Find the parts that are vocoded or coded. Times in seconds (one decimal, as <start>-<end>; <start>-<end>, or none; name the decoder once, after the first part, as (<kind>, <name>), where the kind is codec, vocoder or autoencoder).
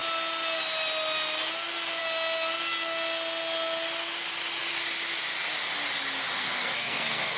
6.4-7.4 (codec, SNAC)